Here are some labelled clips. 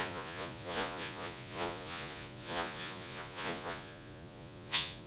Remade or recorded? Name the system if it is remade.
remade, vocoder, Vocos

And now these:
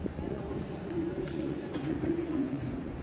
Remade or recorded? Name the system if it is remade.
remade, vocoder, Vocos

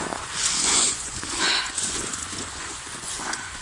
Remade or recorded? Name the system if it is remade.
remade, vocoder, Vocos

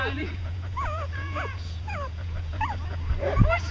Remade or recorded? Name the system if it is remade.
remade, vocoder, Vocos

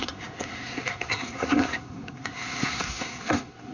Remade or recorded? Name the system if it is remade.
remade, codec, SNAC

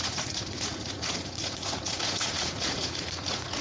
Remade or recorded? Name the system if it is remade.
remade, vocoder, Vocos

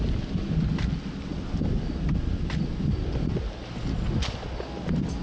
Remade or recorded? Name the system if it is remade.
recorded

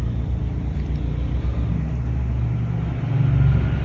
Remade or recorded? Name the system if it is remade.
recorded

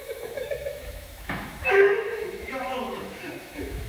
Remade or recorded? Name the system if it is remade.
remade, autoencoder, DAC-VAE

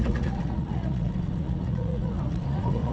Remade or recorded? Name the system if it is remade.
remade, vocoder, Vocos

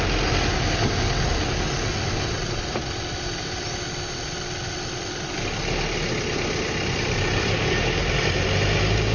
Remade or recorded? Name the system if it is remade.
recorded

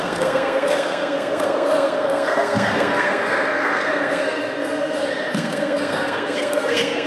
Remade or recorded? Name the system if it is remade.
remade, codec, SNAC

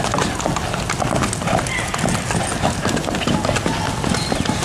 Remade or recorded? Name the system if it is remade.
recorded